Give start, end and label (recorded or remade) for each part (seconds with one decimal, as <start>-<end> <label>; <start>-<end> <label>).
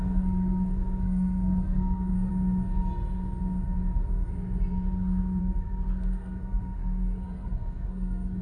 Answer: 0.0-2.3 remade; 2.3-5.4 recorded; 5.4-8.4 remade